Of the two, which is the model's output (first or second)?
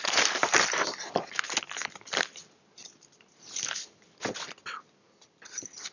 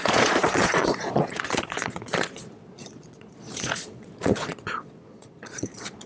second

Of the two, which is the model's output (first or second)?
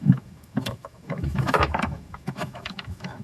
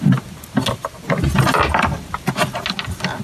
first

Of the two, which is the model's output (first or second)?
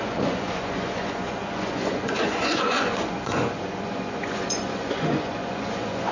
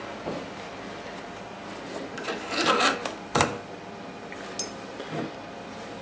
first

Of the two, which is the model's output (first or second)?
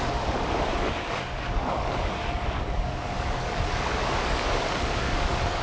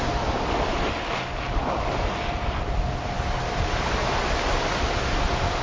first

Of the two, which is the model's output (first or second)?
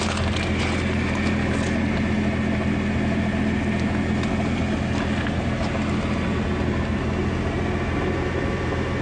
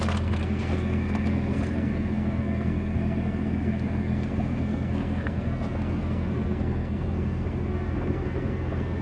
second